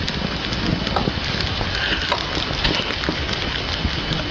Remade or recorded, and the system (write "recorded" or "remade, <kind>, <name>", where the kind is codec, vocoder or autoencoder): recorded